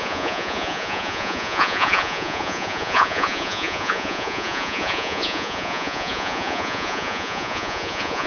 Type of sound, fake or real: fake